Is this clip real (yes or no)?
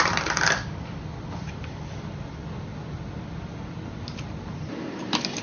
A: yes